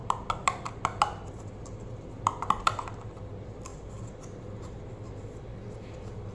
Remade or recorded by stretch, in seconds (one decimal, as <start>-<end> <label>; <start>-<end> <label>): 0.0-6.3 recorded